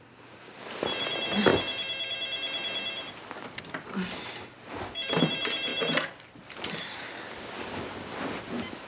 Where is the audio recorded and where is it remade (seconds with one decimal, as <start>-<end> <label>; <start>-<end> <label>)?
0.0-1.5 remade; 1.5-3.4 recorded; 3.4-5.7 remade; 5.7-8.9 recorded